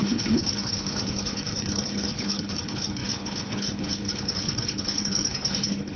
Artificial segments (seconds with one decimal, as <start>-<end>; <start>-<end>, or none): 0.0-6.0